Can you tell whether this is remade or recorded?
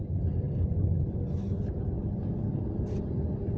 recorded